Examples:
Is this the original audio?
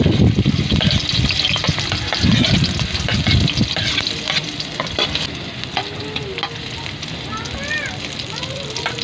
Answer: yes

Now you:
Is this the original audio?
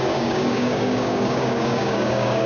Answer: no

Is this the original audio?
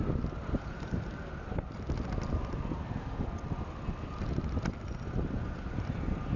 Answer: yes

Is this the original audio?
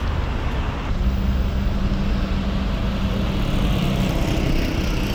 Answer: yes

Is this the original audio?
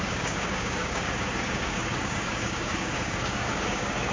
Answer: no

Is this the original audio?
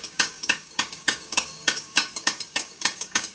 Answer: no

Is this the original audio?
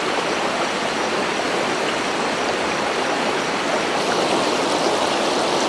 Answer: yes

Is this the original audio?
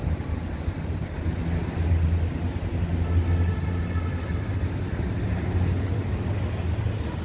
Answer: yes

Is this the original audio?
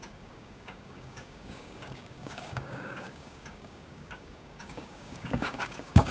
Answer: no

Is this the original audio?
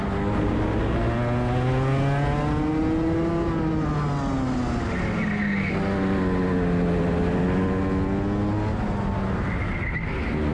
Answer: yes